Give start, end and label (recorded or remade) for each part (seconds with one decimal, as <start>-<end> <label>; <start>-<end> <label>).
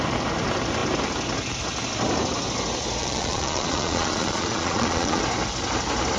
0.0-3.0 recorded; 3.0-5.2 remade; 5.2-6.2 recorded